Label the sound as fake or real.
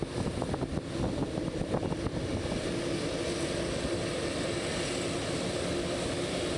real